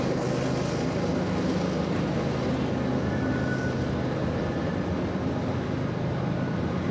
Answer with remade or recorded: recorded